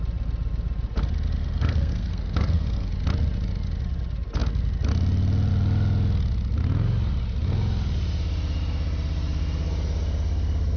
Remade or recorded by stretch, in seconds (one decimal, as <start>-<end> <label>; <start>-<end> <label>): 0.0-1.4 recorded; 1.4-2.9 remade; 2.9-10.8 recorded